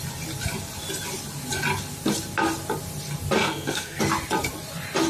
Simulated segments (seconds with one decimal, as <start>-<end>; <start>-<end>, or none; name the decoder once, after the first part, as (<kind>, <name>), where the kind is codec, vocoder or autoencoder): 3.4-4.0 (codec, SNAC)